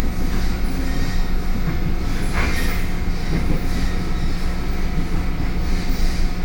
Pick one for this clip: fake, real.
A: real